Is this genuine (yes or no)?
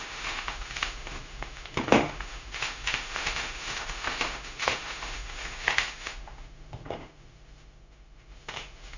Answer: no